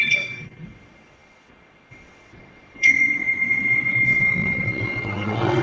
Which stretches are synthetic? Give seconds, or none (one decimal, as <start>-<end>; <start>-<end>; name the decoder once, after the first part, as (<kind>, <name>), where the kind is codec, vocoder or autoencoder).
0.0-5.6 (vocoder, WaveNeXt)